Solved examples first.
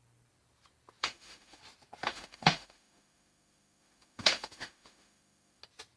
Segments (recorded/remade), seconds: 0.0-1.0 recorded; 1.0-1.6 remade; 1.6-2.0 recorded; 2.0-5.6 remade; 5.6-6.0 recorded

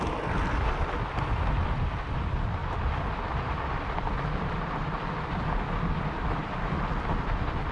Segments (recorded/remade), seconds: 0.0-2.6 recorded; 2.6-6.8 remade; 6.8-7.7 recorded